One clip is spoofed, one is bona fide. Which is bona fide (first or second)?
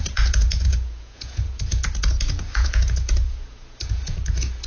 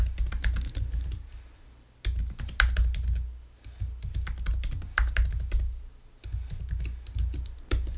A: second